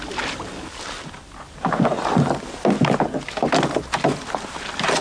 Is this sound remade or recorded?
recorded